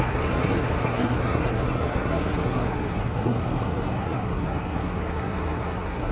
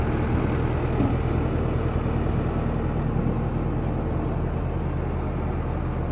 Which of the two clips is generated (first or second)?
first